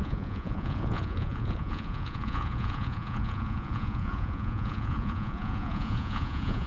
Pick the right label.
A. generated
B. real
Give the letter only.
A